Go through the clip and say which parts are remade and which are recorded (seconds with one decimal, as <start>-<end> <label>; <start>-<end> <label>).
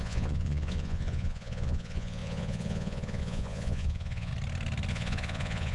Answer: 0.0-4.3 remade; 4.3-4.9 recorded; 4.9-5.7 remade